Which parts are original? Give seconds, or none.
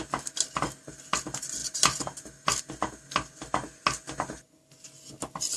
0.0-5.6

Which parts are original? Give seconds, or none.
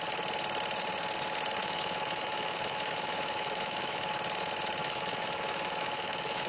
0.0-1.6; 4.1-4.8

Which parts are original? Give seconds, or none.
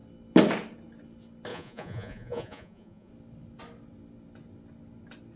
0.0-1.5; 3.1-5.4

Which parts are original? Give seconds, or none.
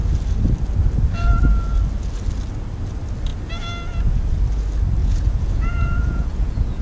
0.0-5.0